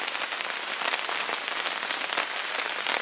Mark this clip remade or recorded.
recorded